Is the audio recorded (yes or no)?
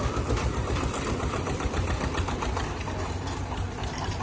no